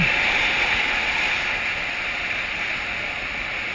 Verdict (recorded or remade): recorded